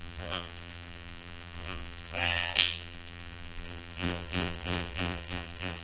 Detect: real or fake fake